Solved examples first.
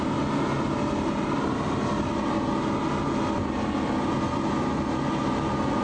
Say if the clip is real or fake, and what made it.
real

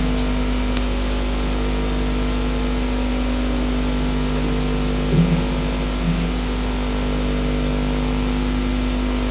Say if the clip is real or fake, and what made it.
real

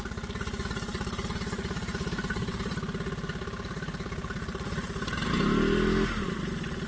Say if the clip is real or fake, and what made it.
real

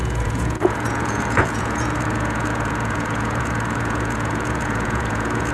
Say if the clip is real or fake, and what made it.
fake, vocoder, Vocos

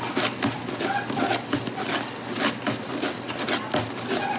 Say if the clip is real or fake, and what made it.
real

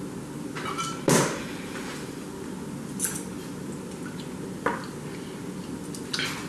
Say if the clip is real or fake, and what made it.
real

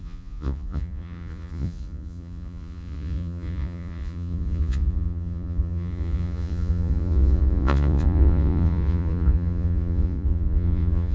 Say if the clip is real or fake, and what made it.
fake, vocoder, Vocos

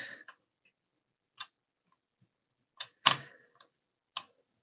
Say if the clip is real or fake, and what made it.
real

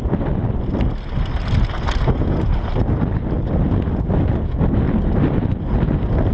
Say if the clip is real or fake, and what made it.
real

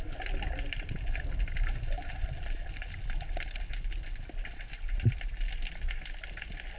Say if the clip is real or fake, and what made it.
real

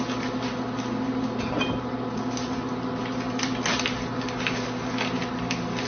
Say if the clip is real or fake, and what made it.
real